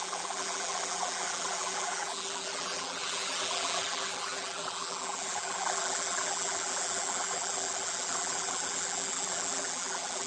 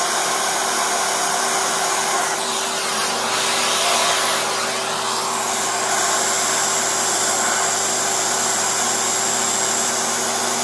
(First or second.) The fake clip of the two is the first